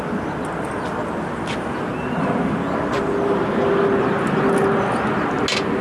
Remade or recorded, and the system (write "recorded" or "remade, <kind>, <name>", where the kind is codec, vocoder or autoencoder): recorded